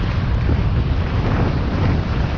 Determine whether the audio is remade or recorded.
recorded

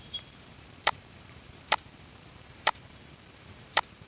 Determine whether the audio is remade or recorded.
remade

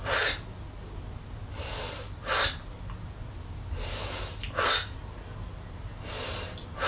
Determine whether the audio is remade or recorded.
recorded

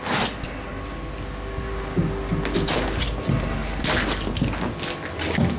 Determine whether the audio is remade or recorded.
recorded